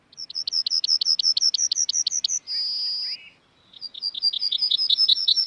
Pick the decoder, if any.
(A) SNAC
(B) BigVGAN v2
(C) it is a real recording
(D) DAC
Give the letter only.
C